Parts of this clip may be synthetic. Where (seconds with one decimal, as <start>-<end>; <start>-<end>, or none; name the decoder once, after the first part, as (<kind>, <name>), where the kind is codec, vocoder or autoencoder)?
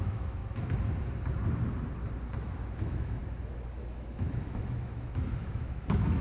0.0-0.4 (autoencoder, DAC-VAE); 2.4-3.2; 3.8-6.2